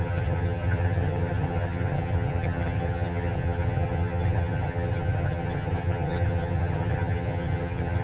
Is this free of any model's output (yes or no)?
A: no